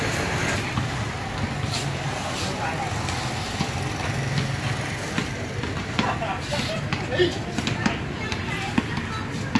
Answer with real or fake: real